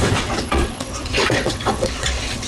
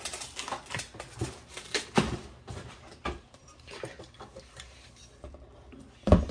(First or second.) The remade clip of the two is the first